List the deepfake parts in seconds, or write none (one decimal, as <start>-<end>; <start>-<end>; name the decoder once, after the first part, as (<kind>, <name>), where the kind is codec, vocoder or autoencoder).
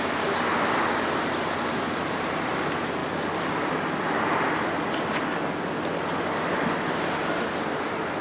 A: none